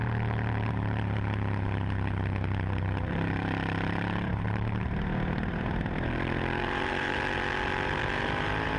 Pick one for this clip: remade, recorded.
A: remade